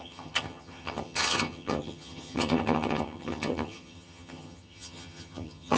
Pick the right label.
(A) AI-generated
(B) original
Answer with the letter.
A